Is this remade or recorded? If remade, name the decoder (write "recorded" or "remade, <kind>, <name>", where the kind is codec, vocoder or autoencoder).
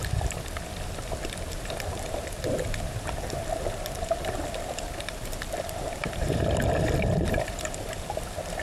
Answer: remade, vocoder, BigVGAN v2